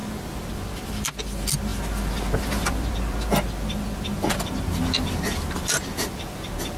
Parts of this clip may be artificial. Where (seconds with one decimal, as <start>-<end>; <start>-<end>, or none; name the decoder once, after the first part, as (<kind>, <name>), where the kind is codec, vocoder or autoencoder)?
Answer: none